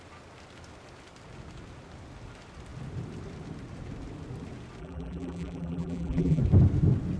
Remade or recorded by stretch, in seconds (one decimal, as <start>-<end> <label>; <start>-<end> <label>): 0.0-4.8 recorded; 4.8-6.4 remade; 6.4-7.2 recorded